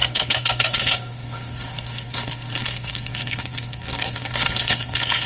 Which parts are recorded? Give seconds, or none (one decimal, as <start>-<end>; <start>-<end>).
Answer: none